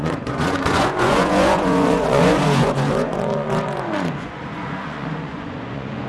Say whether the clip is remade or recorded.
remade